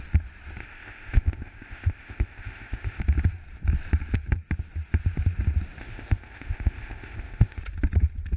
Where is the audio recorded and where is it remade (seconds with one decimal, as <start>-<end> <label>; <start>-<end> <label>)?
0.0-0.6 recorded; 0.6-3.0 remade; 3.0-5.8 recorded; 5.8-7.6 remade; 7.6-8.4 recorded